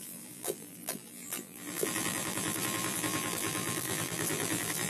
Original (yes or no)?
no